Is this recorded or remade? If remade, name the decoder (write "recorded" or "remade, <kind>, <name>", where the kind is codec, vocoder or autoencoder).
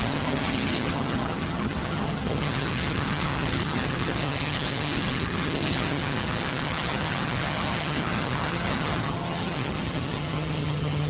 remade, vocoder, HiFi-GAN